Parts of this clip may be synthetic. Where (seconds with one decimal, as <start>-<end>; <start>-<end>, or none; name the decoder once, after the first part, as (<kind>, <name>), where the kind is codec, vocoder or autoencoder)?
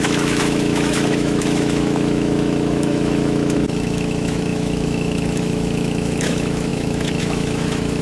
0.0-8.0 (autoencoder, DAC-VAE)